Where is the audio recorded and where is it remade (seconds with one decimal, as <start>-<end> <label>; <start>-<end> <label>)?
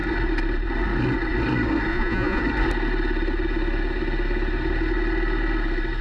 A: 0.0-1.9 recorded; 1.9-2.4 remade; 2.4-6.0 recorded